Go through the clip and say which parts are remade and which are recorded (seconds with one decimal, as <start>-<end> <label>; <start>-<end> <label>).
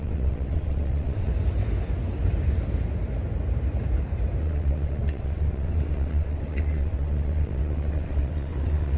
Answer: 0.0-1.3 remade; 1.3-4.4 recorded; 4.4-9.0 remade